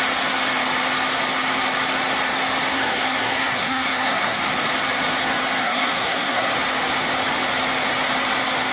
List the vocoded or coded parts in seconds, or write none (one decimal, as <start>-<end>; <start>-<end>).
2.7-4.4; 5.6-6.5